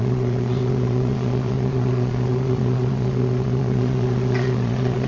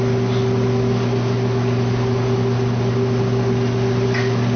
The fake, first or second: first